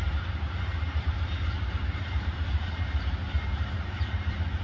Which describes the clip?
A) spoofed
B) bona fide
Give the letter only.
A